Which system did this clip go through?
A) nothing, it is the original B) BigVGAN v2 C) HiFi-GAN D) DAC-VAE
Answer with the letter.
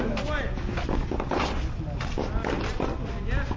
A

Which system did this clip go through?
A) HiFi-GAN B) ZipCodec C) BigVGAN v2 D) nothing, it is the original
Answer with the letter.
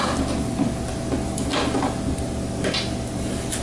D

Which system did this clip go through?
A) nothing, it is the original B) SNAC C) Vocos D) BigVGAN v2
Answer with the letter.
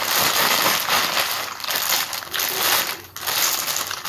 A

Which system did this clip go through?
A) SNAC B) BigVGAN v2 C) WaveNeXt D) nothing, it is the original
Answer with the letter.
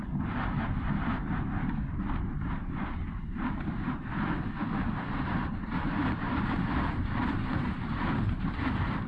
B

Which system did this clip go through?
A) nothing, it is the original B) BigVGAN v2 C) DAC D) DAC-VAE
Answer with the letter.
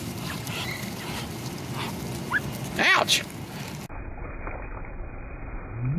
A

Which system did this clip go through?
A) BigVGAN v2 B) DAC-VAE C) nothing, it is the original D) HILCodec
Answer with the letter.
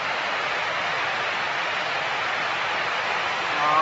C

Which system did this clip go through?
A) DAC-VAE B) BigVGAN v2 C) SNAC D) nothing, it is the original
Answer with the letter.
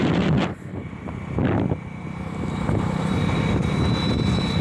B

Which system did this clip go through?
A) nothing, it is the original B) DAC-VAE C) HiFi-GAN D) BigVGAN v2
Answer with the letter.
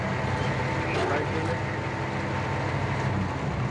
A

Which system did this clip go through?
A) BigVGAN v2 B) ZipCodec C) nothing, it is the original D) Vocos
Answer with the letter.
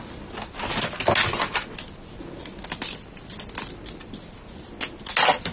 C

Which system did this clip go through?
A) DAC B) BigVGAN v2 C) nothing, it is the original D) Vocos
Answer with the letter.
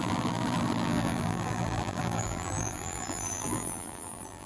B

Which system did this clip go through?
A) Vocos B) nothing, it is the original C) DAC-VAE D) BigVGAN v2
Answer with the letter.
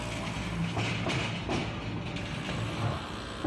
B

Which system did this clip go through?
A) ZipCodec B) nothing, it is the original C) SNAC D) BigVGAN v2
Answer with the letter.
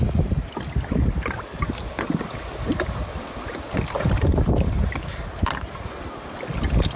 B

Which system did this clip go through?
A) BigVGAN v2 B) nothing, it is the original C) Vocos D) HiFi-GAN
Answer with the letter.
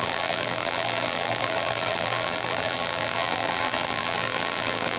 A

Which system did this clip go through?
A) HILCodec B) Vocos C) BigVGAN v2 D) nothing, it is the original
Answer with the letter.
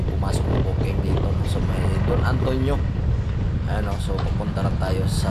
D